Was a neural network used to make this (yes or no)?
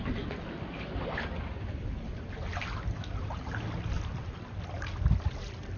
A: no